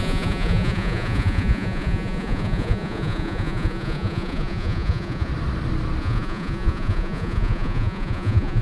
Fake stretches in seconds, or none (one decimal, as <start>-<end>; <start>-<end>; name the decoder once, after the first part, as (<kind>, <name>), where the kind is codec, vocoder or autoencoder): 0.0-5.3 (vocoder, Vocos); 6.0-8.6

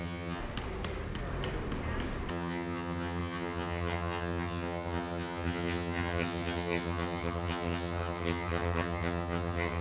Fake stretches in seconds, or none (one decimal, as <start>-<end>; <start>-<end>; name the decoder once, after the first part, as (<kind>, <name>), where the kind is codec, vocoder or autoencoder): 0.0-0.4 (vocoder, HiFi-GAN); 2.3-9.8